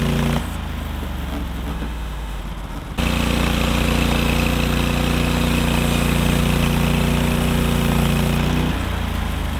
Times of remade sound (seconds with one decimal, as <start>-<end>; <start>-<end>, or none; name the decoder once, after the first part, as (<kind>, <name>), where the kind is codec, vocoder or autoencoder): 1.7-2.4 (autoencoder, DAC-VAE)